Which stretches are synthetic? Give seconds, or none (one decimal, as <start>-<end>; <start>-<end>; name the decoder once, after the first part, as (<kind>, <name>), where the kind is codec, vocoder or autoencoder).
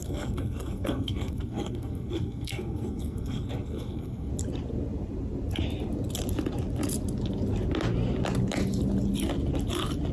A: 0.0-4.3 (codec, SNAC)